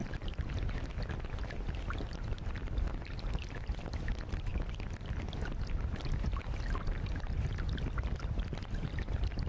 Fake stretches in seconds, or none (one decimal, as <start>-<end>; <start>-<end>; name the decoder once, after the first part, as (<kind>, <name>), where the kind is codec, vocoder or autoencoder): none